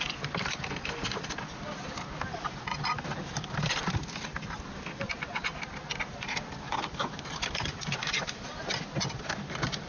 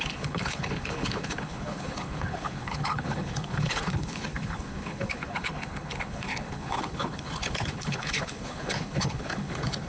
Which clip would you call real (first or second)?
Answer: first